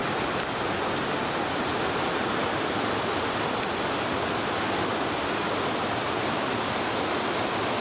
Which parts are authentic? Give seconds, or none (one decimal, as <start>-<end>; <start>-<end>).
0.0-7.8